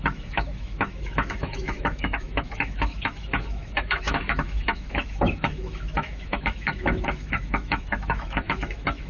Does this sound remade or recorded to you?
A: remade